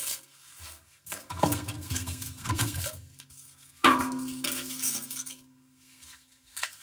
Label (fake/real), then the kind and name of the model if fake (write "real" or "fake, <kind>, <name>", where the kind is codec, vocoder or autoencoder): fake, codec, SNAC